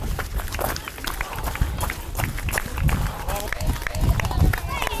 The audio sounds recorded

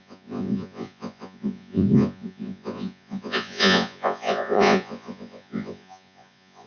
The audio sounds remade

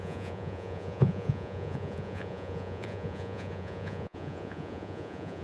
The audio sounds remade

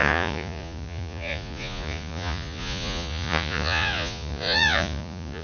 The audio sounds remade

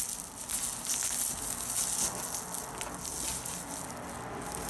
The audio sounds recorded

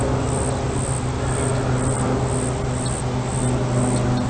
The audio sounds recorded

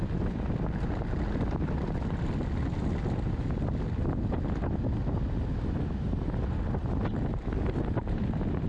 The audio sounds recorded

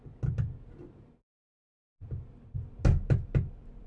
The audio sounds recorded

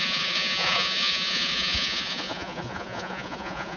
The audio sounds remade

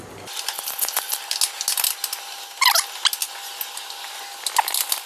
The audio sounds recorded